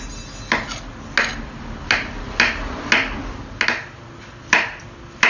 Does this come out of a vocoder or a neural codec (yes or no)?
no